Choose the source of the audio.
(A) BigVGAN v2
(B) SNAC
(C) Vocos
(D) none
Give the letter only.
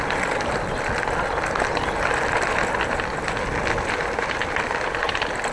A